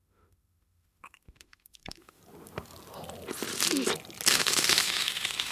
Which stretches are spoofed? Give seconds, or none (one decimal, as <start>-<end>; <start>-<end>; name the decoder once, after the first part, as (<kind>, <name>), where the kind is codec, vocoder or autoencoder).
0.0-2.2 (autoencoder, DAC-VAE); 4.3-5.5